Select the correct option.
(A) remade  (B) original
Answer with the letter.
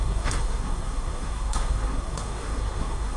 A